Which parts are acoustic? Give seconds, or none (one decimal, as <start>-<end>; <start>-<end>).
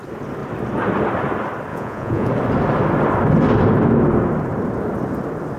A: 0.0-1.7; 2.3-5.6